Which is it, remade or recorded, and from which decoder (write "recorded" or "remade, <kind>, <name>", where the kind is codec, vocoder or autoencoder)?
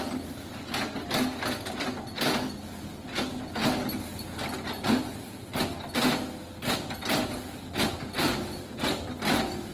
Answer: recorded